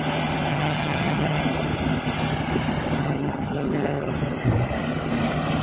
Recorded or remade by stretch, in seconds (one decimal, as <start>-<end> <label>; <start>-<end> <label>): 0.0-0.5 recorded; 0.5-1.4 remade; 1.4-3.0 recorded; 3.0-4.1 remade; 4.1-5.6 recorded